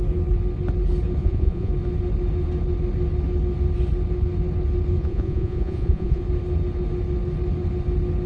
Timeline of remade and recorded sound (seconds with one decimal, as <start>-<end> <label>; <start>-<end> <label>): 0.0-1.2 recorded; 1.2-1.7 remade; 1.7-5.0 recorded; 5.0-6.2 remade; 6.2-8.3 recorded